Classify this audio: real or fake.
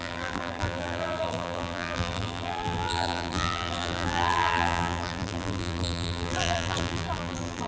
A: fake